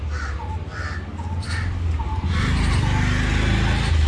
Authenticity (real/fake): real